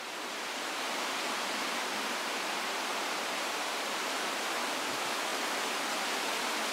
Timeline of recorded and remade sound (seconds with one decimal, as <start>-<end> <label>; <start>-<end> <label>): 0.0-2.9 recorded; 2.9-3.4 remade; 3.4-6.7 recorded